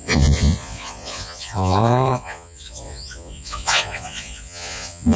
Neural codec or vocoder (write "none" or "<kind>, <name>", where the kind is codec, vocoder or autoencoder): vocoder, Vocos